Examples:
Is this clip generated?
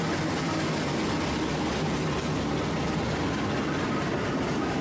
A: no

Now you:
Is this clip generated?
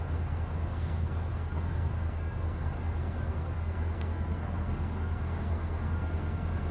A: yes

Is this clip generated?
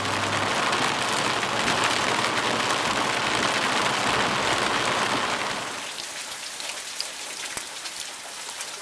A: no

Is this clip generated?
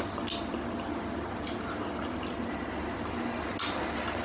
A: no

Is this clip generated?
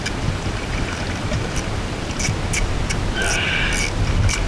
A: no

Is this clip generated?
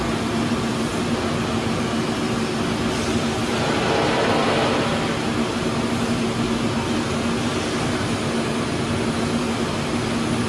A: no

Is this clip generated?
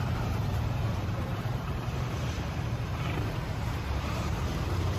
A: yes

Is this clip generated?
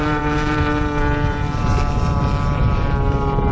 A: yes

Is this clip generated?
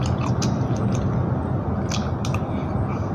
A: no